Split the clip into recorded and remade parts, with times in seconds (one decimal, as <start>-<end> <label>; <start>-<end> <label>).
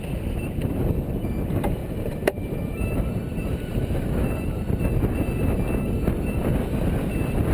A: 0.0-1.8 recorded; 1.8-4.8 remade; 4.8-7.5 recorded